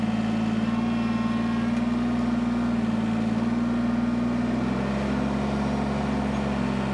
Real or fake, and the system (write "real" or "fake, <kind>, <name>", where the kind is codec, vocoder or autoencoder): real